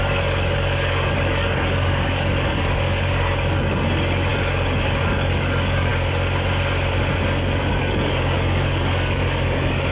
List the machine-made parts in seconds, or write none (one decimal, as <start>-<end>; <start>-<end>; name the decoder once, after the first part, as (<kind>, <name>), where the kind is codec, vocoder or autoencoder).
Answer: 0.0-5.9 (codec, DAC); 7.7-9.9